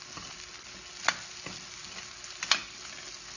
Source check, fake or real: real